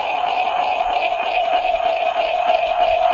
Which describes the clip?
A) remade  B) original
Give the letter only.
B